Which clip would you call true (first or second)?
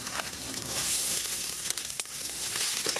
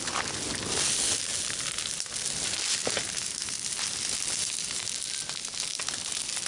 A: second